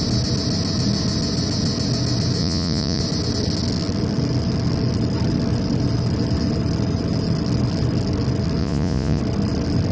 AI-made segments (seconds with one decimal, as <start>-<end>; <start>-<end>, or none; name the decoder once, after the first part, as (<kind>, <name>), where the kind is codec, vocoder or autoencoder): 2.4-3.0 (vocoder, Vocos); 8.6-9.2